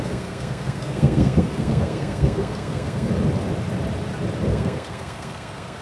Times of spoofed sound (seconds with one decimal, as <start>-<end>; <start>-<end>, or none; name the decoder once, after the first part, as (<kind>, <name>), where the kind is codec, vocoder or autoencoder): 0.0-3.1 (codec, SNAC); 4.5-5.8